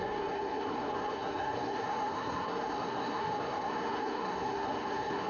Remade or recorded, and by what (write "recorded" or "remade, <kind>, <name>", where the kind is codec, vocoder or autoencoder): remade, codec, SNAC